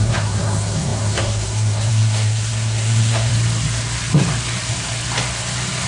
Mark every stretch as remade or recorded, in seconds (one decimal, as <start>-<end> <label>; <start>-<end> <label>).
0.0-3.3 remade; 3.3-5.9 recorded